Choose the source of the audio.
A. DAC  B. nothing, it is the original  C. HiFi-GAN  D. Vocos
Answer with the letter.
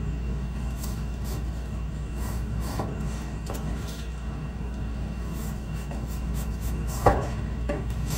A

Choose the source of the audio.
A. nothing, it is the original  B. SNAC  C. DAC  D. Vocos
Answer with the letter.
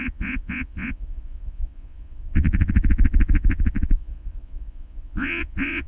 D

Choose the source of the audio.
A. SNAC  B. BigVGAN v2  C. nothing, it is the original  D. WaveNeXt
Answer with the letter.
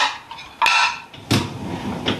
C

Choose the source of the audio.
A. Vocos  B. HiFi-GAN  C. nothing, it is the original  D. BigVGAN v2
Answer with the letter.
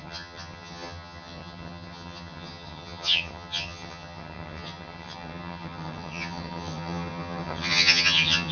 B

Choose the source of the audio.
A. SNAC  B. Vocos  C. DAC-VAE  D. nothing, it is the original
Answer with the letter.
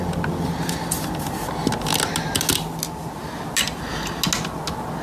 D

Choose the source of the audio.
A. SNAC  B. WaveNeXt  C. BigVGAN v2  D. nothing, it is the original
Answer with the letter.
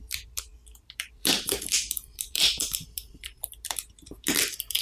C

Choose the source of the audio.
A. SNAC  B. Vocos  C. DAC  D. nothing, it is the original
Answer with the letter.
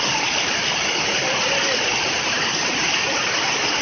D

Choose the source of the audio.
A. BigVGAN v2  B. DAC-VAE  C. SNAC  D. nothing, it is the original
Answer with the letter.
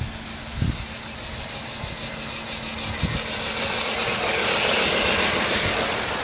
D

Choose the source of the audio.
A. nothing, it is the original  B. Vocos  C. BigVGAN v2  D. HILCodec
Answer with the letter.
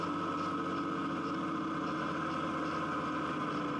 A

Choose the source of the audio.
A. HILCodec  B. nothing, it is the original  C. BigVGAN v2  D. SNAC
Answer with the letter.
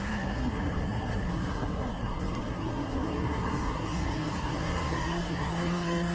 D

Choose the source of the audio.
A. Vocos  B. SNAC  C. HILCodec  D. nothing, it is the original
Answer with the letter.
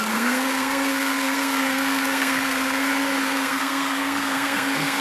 B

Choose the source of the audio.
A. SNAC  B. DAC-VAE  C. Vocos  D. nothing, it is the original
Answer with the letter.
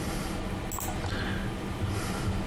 D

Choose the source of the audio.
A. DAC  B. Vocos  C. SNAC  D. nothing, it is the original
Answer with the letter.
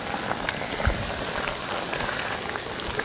D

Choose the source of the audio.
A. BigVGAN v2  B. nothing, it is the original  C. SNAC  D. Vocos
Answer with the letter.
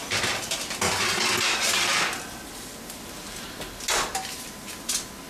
B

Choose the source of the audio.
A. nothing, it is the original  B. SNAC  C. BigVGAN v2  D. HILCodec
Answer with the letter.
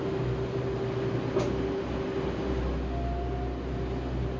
A